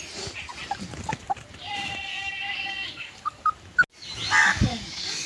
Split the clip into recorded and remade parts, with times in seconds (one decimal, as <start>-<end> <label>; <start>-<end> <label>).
0.0-2.1 recorded; 2.1-3.4 remade; 3.4-4.4 recorded; 4.4-5.3 remade